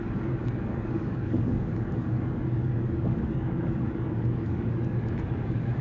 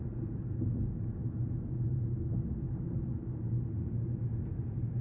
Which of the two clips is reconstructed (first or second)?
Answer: first